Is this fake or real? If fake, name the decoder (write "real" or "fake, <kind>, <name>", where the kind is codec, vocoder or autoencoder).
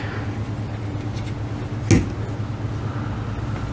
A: real